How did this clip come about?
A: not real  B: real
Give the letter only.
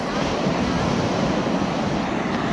B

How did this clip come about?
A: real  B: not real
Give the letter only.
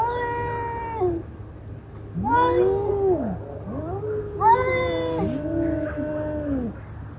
A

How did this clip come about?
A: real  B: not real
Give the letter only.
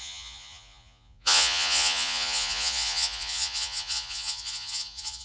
B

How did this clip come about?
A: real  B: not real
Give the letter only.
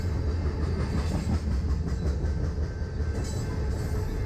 A